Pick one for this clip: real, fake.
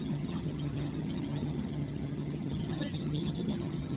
fake